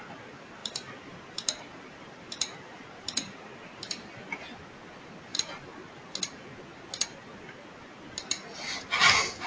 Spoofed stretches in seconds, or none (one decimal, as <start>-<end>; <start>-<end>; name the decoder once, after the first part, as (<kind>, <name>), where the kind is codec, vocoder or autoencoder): 0.6-3.5 (vocoder, BigVGAN v2)